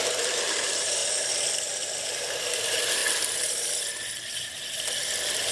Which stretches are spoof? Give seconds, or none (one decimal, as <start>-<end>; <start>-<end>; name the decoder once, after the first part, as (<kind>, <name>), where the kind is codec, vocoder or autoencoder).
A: 0.0-1.0 (vocoder, BigVGAN v2); 2.0-3.0